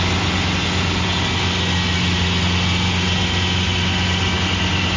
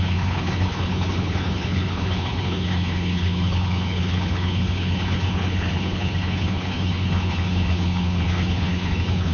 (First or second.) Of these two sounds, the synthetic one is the second